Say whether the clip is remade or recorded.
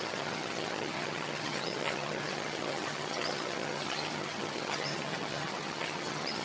remade